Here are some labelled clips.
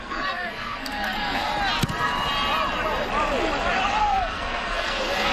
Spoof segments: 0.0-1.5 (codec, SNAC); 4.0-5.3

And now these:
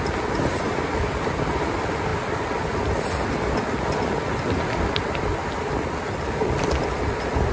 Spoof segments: none

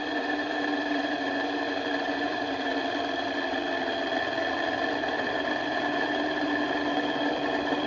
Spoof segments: 0.0-2.7 (vocoder, BigVGAN v2); 4.9-7.9

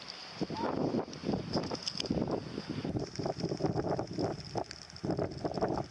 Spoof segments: none

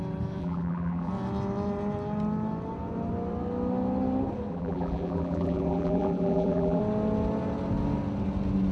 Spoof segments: 0.4-1.1 (vocoder, BigVGAN v2); 4.5-6.8

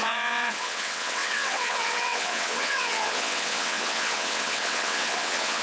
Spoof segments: 0.0-5.6 (vocoder, WaveNeXt)

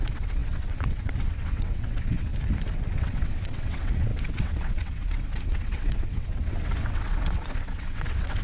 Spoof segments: 0.0-2.3 (vocoder, WaveNeXt); 2.9-8.4